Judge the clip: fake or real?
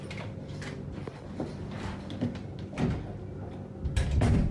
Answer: real